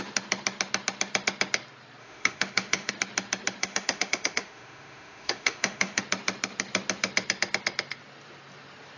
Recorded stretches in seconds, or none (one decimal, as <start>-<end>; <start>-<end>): 0.0-2.0; 2.9-3.6; 6.0-9.0